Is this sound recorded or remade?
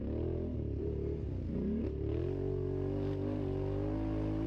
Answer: recorded